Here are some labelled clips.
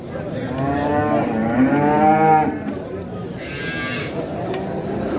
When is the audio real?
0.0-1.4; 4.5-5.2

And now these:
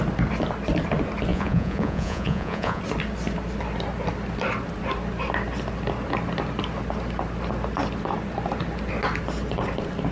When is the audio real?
0.0-1.3; 2.8-10.1